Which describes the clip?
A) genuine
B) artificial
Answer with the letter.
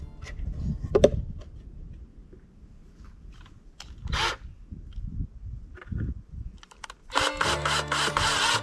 A